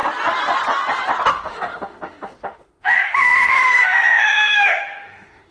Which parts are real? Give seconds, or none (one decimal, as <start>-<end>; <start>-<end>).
0.0-1.3